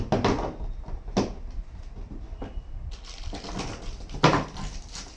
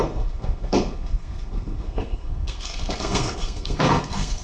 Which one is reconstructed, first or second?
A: second